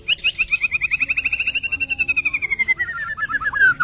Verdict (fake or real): real